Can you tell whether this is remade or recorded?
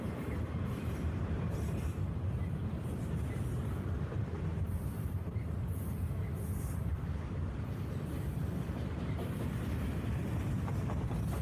remade